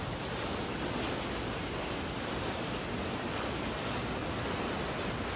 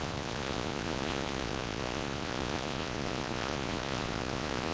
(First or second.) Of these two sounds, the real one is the first